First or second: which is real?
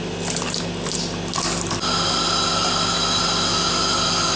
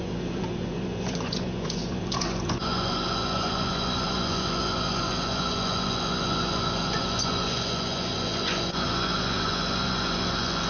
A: first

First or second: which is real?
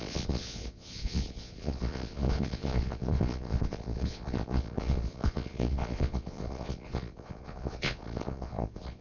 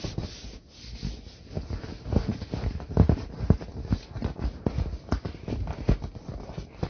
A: second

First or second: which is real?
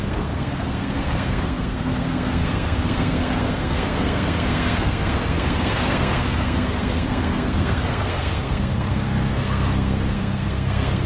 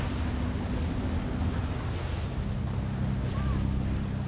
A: second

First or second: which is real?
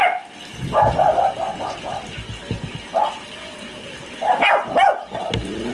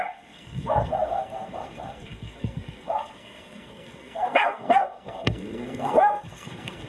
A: first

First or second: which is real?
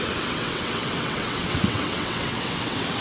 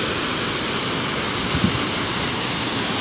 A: second